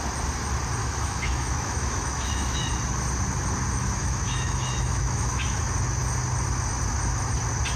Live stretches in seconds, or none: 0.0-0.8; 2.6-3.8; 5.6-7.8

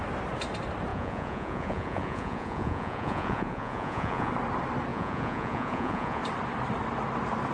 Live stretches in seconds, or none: 0.0-0.9; 4.3-4.9; 6.2-7.5

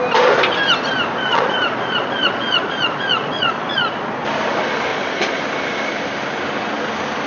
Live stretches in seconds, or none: 0.0-1.3; 4.1-4.9; 5.4-7.3

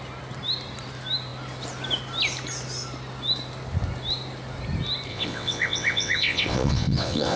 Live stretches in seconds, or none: 0.0-5.1

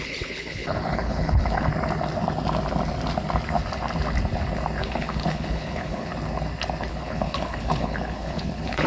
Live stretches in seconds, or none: 1.7-4.8; 6.1-6.9